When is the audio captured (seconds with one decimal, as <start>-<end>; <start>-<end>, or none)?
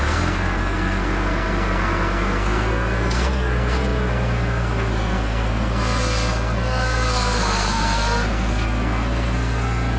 none